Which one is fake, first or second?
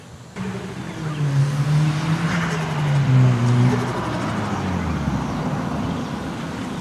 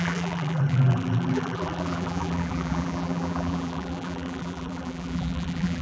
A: second